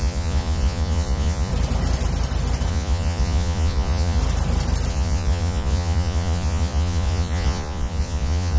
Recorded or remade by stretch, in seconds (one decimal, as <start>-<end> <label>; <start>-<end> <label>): 0.0-1.5 remade; 1.5-2.7 recorded; 2.7-4.2 remade; 4.2-4.9 recorded; 4.9-8.6 remade